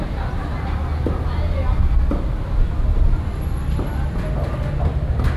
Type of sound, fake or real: real